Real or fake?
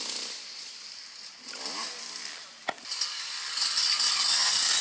fake